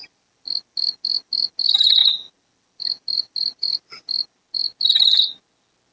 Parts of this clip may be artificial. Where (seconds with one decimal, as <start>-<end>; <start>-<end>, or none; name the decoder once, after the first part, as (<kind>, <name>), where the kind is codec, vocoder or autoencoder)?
none